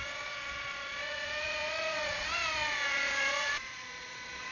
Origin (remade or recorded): remade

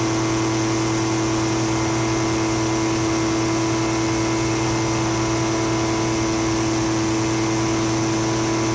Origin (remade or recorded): recorded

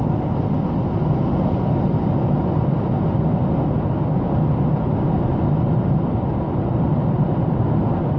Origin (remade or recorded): recorded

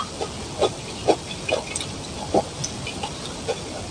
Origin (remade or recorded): recorded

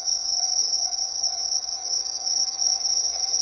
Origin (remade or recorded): remade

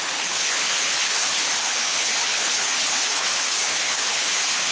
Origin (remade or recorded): remade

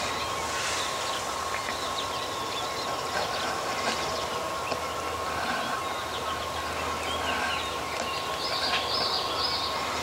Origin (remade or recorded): recorded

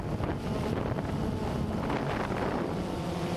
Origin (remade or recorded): remade